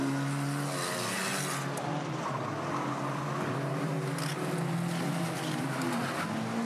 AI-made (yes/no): no